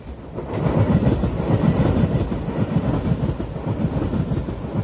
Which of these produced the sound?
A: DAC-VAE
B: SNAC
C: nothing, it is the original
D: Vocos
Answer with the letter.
C